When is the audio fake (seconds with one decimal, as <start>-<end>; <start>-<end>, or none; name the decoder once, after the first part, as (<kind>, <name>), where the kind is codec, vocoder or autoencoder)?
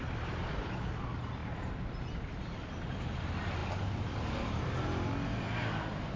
none